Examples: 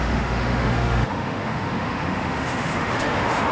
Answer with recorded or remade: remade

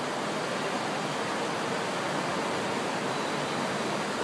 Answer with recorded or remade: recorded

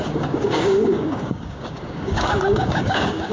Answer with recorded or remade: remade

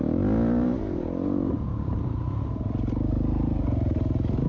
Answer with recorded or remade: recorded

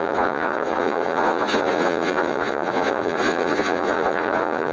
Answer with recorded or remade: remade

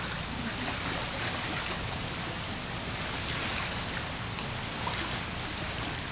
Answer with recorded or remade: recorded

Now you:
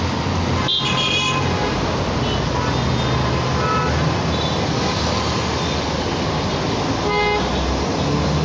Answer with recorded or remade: recorded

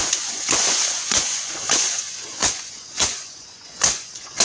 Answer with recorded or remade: remade